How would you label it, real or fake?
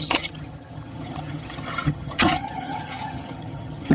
fake